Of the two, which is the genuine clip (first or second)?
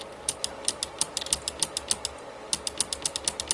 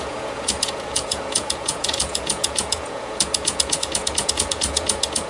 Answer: first